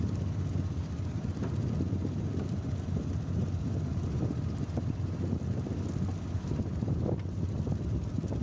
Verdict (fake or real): real